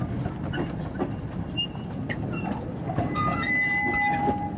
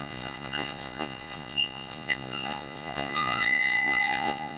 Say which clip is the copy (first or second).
second